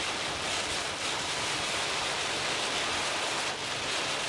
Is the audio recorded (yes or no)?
yes